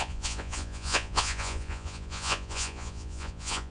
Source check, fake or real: fake